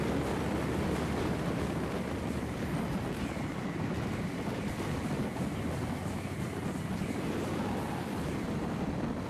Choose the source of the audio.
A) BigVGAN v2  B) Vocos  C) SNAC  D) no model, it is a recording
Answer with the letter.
D